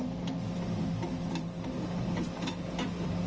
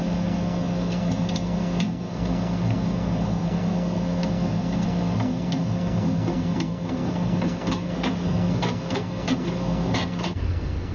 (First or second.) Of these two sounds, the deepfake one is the second